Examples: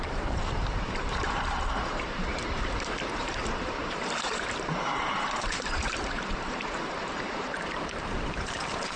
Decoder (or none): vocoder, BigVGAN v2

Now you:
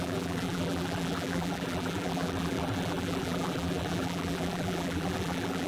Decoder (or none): vocoder, BigVGAN v2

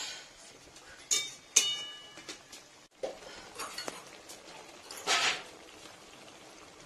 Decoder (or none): none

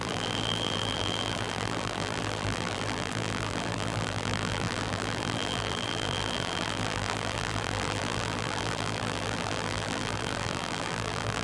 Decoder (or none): vocoder, BigVGAN v2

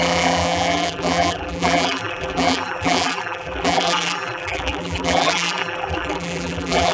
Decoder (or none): vocoder, BigVGAN v2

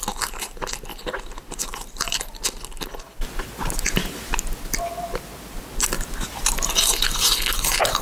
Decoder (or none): none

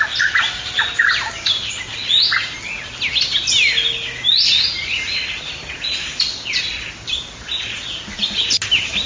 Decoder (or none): none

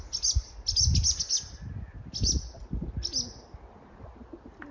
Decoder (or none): none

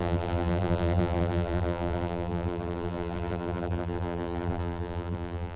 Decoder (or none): vocoder, BigVGAN v2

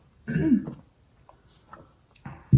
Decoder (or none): none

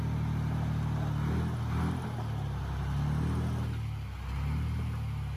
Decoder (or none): none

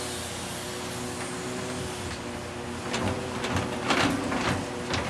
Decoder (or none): none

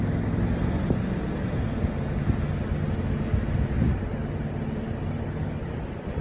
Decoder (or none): none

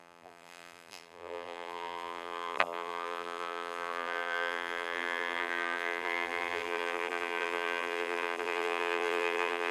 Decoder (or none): vocoder, BigVGAN v2